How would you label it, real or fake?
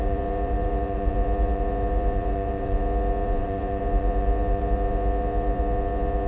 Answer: fake